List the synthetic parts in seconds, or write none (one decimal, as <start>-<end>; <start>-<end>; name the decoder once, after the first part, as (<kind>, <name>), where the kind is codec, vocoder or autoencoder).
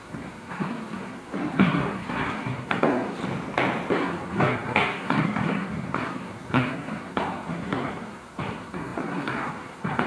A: 0.0-3.2 (codec, SNAC); 3.9-10.1